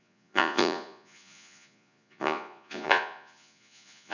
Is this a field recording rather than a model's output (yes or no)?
no